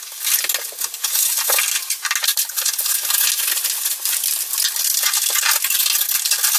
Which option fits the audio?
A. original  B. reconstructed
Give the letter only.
A